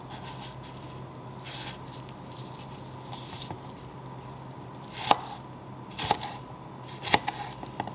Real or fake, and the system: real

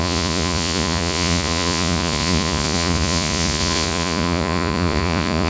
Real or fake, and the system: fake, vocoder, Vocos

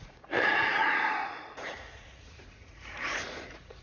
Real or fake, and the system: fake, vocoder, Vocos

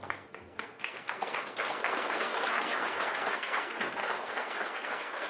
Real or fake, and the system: fake, codec, SNAC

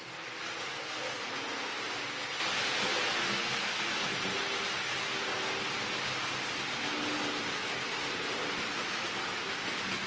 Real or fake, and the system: real